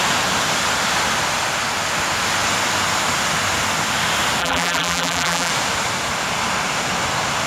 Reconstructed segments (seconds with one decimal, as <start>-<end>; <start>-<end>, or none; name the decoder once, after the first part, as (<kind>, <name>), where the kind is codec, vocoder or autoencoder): 4.4-5.5 (vocoder, BigVGAN v2)